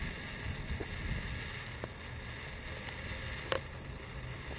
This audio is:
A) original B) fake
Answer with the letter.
A